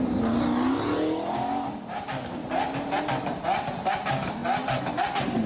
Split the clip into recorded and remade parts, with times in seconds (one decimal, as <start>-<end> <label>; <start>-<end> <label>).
0.0-5.5 recorded